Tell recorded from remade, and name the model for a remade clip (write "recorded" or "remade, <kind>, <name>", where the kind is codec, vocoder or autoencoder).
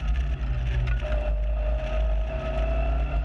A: recorded